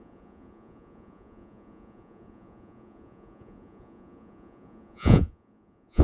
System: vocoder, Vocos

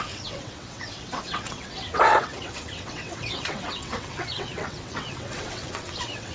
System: vocoder, WaveNeXt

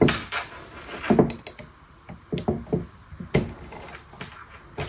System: none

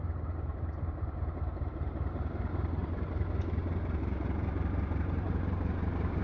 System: vocoder, BigVGAN v2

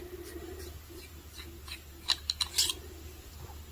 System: none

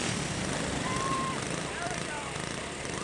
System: vocoder, BigVGAN v2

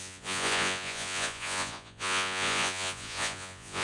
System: vocoder, Vocos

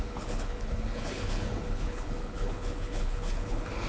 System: codec, HILCodec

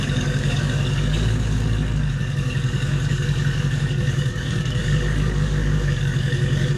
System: codec, DAC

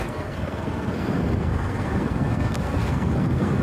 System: codec, SNAC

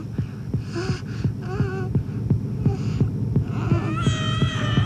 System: none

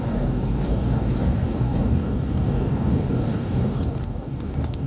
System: codec, DAC